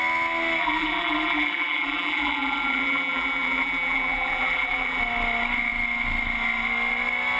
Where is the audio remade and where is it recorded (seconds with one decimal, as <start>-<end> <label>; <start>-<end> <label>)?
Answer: 0.0-0.6 recorded; 0.6-5.0 remade; 5.0-7.4 recorded